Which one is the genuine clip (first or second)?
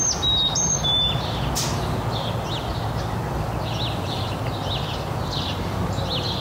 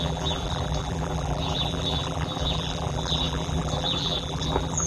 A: first